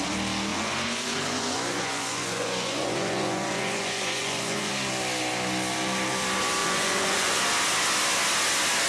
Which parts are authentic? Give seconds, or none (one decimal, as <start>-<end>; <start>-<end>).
0.0-0.5; 4.7-6.6; 7.4-8.9